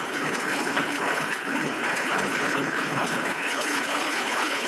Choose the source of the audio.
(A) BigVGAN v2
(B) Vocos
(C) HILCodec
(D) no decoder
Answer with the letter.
C